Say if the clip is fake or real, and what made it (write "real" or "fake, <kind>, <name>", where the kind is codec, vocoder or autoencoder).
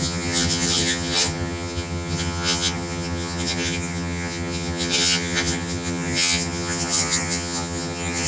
fake, vocoder, HiFi-GAN